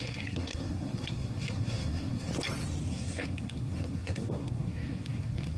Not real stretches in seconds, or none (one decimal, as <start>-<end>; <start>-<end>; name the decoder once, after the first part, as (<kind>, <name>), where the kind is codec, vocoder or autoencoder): 0.0-2.3 (codec, SNAC); 2.9-5.6